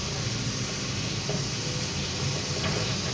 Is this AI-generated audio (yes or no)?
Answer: no